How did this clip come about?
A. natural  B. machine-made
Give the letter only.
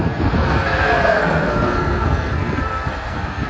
B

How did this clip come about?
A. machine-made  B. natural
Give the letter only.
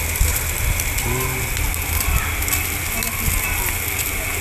B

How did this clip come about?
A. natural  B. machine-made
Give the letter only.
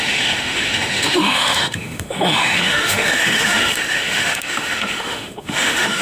B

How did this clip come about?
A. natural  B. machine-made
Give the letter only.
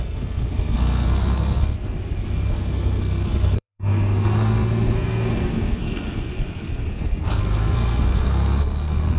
B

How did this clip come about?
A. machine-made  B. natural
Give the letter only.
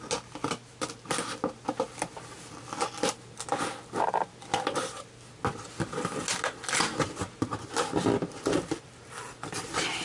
B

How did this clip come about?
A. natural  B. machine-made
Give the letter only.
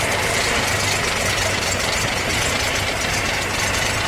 A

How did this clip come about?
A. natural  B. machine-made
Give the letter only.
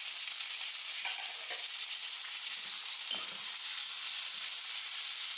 A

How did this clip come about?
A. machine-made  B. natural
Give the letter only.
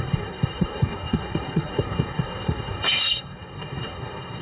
A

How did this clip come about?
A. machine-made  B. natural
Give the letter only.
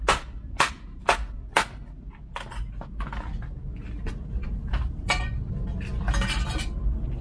B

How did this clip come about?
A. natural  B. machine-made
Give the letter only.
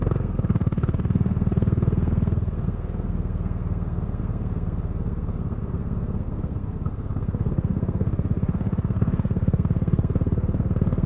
B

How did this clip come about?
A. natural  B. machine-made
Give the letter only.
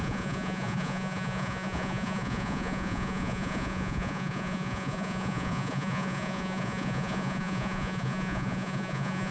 B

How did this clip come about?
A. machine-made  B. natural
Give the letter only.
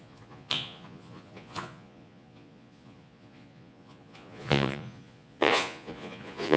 A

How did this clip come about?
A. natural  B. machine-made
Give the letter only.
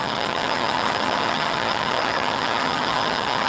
B